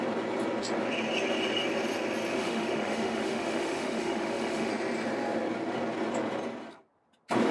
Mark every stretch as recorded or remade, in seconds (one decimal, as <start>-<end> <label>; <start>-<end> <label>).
0.0-2.3 recorded; 2.3-4.7 remade; 4.7-7.5 recorded